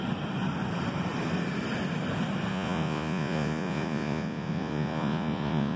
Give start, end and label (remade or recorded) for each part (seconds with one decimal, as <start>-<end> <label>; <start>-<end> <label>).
0.0-2.5 recorded; 2.5-5.8 remade